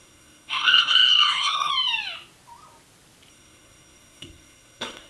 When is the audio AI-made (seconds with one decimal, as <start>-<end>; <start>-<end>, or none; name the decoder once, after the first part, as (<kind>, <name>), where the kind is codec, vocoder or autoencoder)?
0.0-1.7 (codec, SNAC); 3.3-5.1